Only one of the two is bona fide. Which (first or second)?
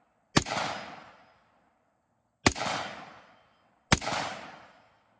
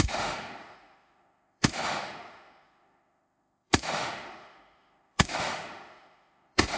first